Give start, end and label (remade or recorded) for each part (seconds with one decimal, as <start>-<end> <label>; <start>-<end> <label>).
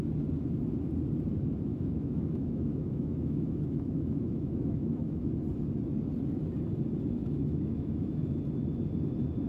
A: 0.0-1.7 recorded; 1.7-5.3 remade; 5.3-7.2 recorded; 7.2-8.4 remade; 8.4-9.5 recorded